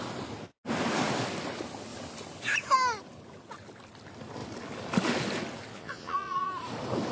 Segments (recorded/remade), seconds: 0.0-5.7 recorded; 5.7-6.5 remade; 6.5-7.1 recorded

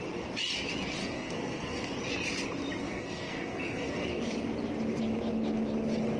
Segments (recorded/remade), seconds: 0.0-1.0 recorded; 1.0-1.9 remade; 1.9-2.8 recorded; 2.8-4.2 remade; 4.2-6.2 recorded

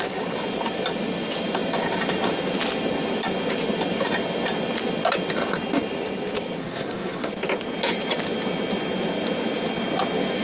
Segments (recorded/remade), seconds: 0.0-6.6 recorded; 6.6-7.3 remade; 7.3-10.4 recorded